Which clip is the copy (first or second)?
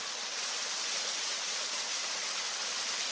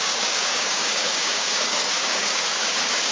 second